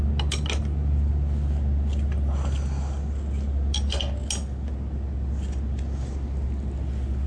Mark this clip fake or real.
real